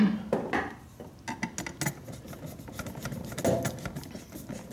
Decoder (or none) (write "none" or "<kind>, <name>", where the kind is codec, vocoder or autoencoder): none